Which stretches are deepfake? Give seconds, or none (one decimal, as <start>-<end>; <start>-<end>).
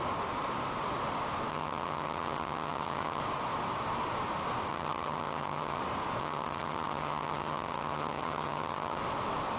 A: 1.5-3.2; 4.7-5.8; 6.2-9.0